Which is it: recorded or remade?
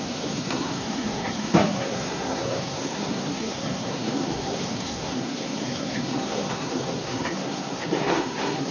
remade